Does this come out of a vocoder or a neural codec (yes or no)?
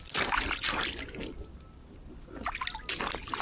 no